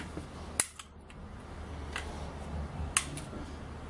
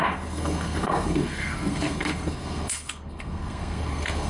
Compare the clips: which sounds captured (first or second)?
first